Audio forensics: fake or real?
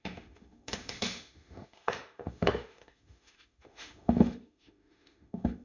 fake